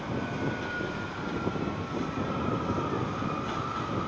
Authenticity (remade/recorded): recorded